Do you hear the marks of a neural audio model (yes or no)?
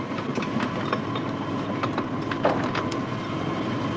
no